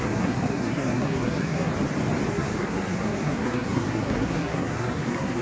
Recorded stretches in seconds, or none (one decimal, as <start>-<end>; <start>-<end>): 1.7-2.3